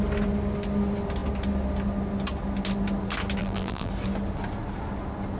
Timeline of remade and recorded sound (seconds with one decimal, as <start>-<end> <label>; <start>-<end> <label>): 0.0-3.4 recorded; 3.4-3.9 remade; 3.9-5.4 recorded